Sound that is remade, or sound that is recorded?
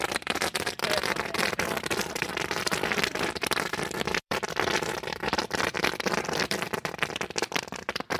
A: remade